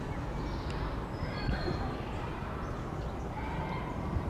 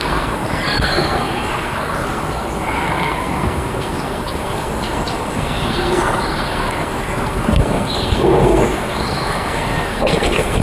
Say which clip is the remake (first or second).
second